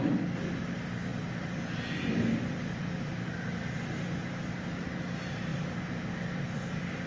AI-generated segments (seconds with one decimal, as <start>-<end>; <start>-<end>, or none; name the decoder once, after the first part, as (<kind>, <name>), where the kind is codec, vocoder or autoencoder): none

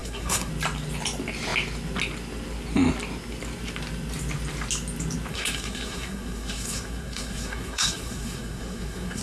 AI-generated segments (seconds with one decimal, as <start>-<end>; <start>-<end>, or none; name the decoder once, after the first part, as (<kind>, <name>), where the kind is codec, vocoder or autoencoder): 0.0-0.5 (codec, SNAC); 5.3-9.2

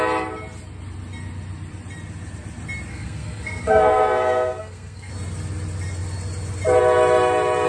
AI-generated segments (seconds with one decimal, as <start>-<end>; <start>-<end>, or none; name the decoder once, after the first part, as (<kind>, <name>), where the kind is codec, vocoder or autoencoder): 2.9-5.1 (codec, SNAC)

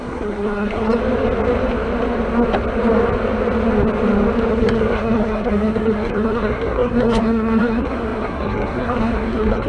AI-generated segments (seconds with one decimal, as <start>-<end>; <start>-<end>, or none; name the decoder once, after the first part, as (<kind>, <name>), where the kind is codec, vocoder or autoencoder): 0.0-1.0 (codec, SNAC); 4.5-9.7

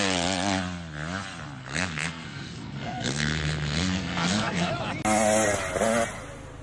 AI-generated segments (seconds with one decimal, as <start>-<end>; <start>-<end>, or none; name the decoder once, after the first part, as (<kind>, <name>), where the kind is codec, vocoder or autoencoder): 1.6-4.7 (codec, SNAC)

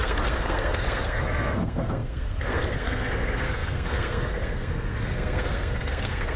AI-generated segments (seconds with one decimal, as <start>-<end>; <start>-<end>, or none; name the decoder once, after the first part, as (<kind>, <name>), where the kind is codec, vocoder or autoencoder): 0.0-6.4 (codec, SNAC)

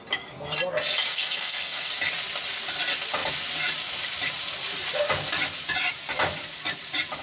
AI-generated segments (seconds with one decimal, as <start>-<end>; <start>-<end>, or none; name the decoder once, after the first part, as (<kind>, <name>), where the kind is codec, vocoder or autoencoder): 1.1-1.9 (codec, SNAC)